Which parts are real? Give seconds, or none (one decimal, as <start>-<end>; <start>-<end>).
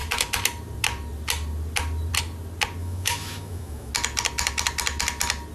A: 0.0-2.8; 3.9-5.5